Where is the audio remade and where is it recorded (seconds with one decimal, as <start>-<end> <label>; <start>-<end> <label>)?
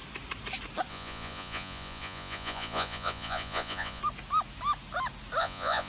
0.0-0.9 recorded; 0.9-4.0 remade; 4.0-5.4 recorded; 5.4-5.9 remade